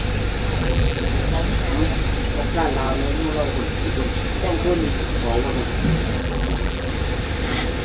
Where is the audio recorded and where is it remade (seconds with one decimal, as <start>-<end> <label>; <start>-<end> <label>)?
0.0-0.6 recorded; 0.6-1.1 remade; 1.1-6.2 recorded; 6.2-6.9 remade; 6.9-7.8 recorded